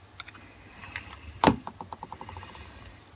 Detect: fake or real fake